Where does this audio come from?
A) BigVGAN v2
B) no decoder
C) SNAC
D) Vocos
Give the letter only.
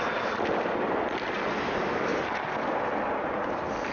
B